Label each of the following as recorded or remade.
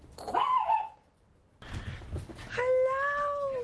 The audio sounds recorded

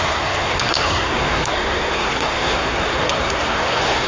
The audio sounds remade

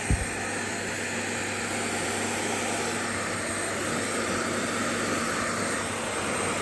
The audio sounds recorded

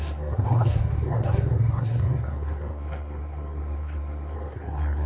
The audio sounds remade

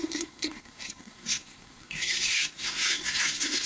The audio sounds remade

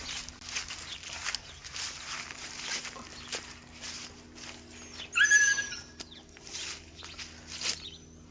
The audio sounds recorded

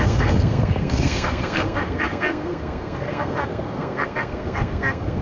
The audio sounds remade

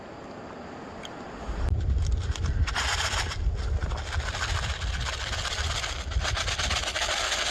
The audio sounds recorded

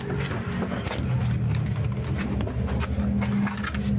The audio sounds recorded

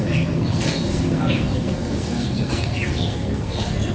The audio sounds remade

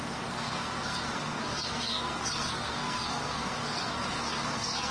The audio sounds remade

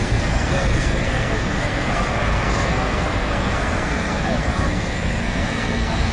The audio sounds remade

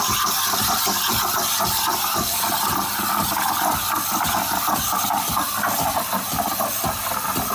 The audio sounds recorded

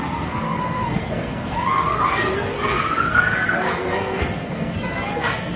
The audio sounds remade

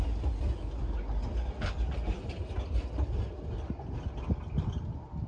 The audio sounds recorded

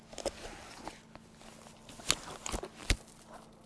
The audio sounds recorded